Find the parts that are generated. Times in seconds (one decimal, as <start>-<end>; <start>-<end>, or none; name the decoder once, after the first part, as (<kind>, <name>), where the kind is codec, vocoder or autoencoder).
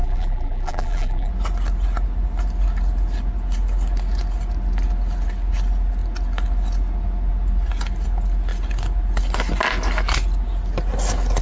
0.0-1.3 (vocoder, BigVGAN v2)